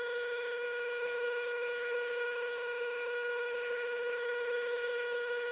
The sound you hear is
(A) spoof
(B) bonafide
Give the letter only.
A